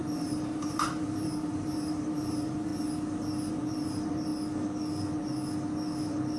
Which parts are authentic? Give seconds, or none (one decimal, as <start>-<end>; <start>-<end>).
2.7-3.5; 4.3-6.4